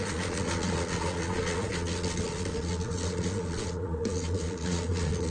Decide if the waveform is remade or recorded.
remade